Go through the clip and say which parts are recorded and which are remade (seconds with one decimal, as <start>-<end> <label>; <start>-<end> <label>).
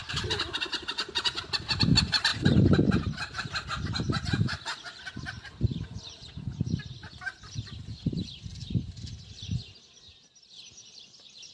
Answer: 0.0-2.3 recorded; 2.3-3.4 remade; 3.4-8.5 recorded; 8.5-9.2 remade; 9.2-11.5 recorded